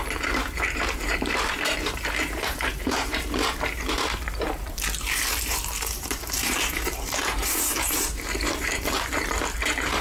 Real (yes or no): no